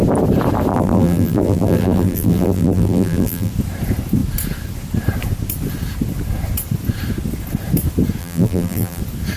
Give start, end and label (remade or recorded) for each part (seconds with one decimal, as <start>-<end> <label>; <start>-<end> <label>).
0.0-0.7 recorded; 0.7-3.5 remade; 3.5-8.2 recorded; 8.2-9.0 remade; 9.0-9.4 recorded